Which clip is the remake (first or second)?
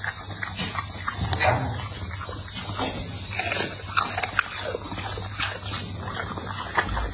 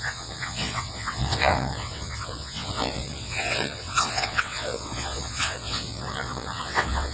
second